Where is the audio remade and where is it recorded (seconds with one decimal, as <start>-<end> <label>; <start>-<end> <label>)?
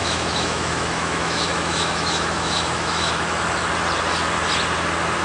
0.0-3.1 remade; 3.1-5.2 recorded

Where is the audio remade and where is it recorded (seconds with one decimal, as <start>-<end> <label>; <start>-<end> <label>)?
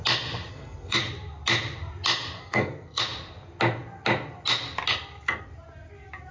0.0-0.5 recorded; 0.5-1.0 remade; 1.0-2.4 recorded; 2.4-3.0 remade; 3.0-6.3 recorded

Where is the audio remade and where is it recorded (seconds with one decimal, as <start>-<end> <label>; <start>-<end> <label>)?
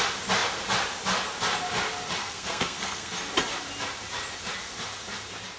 0.0-2.2 recorded; 2.2-3.1 remade; 3.1-5.6 recorded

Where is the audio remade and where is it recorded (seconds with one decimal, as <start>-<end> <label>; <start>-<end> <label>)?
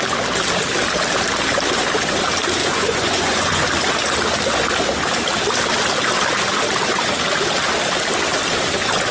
0.0-2.6 recorded; 2.6-3.6 remade; 3.6-9.1 recorded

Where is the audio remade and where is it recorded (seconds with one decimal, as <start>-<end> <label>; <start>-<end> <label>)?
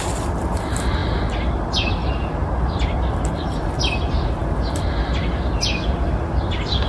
0.0-6.9 recorded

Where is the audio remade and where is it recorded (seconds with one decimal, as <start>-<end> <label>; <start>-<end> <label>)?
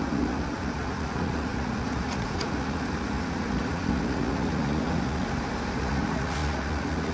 0.0-5.2 remade; 5.2-5.8 recorded; 5.8-7.1 remade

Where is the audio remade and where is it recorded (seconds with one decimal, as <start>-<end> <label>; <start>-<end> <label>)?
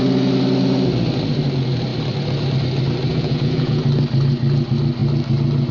0.0-3.1 recorded; 3.1-3.8 remade; 3.8-5.7 recorded